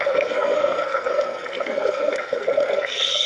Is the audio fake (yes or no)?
yes